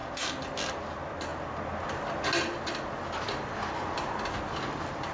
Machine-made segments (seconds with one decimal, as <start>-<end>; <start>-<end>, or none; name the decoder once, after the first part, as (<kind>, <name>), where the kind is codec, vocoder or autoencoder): none